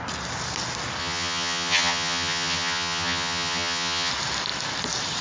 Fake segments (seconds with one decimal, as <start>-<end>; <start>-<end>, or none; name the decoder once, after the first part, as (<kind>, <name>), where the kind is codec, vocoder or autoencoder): 1.0-4.1 (vocoder, HiFi-GAN)